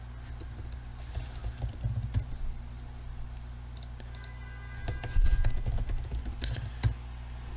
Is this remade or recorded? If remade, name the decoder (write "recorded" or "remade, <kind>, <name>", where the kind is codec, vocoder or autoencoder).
recorded